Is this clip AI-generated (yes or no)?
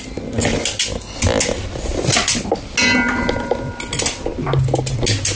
no